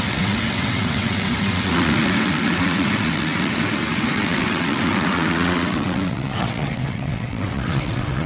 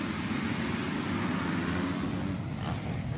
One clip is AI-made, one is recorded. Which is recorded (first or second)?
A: second